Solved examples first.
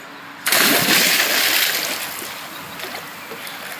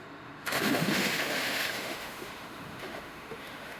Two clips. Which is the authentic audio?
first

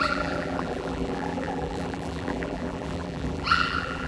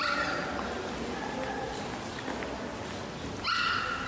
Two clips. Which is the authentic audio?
second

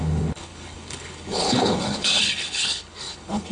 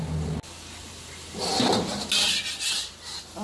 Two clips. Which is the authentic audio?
second